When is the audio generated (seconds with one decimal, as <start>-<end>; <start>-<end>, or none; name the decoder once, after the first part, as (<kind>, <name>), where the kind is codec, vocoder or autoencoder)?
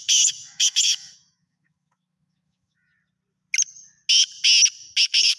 0.0-2.9 (autoencoder, DAC-VAE); 5.0-5.4